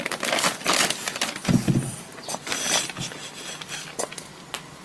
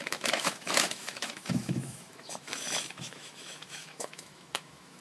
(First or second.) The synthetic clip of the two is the second